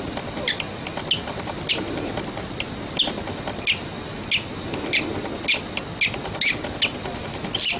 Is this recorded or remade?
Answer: recorded